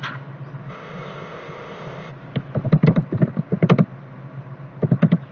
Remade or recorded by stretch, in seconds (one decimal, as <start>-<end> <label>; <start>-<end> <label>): 0.0-0.7 recorded; 0.7-2.1 remade; 2.1-5.3 recorded

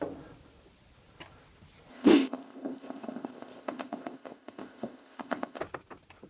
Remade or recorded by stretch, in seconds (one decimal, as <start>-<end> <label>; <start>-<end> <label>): 0.0-1.9 recorded; 1.9-5.6 remade; 5.6-6.3 recorded

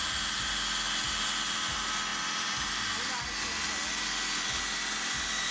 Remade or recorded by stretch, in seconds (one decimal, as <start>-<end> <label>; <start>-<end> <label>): 0.0-5.5 recorded

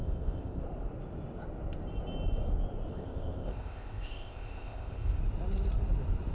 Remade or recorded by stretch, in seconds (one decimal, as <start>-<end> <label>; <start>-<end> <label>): 0.0-0.6 remade; 0.6-2.9 recorded; 2.9-5.2 remade; 5.2-6.3 recorded

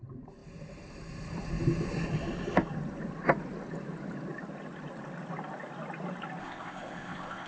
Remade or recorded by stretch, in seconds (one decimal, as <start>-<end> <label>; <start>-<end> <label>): 0.0-6.4 recorded; 6.4-7.5 remade